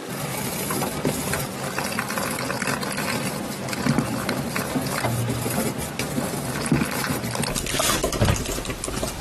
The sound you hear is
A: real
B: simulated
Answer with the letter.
A